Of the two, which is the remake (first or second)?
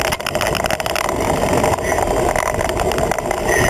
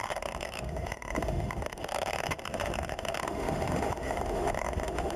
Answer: second